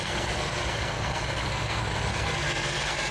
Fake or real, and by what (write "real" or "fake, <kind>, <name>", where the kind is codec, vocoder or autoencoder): fake, codec, SNAC